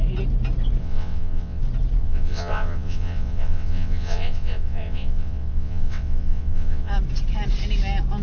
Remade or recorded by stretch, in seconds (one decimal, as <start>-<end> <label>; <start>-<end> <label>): 0.0-0.8 recorded; 0.8-1.6 remade; 1.6-2.0 recorded; 2.0-6.9 remade; 6.9-8.2 recorded